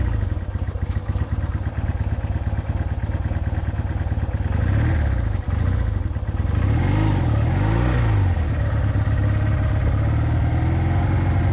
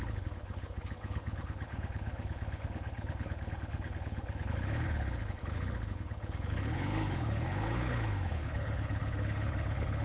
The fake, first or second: second